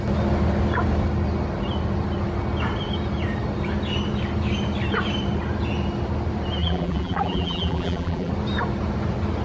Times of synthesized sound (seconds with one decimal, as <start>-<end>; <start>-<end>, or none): 6.6-8.3